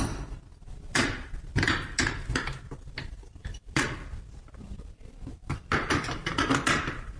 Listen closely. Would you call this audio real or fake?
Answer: fake